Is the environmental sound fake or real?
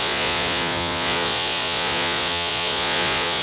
fake